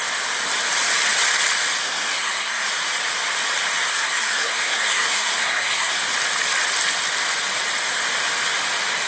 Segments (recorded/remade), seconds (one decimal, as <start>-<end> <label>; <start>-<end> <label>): 0.0-1.8 recorded; 1.8-2.7 remade; 2.7-3.9 recorded; 3.9-6.0 remade; 6.0-9.1 recorded